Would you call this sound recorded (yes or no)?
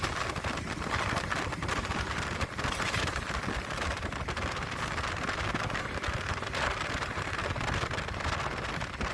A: yes